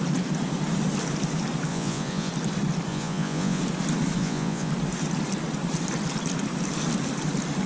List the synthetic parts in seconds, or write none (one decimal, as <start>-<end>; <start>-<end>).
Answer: 1.7-2.3; 2.9-3.6; 4.2-4.7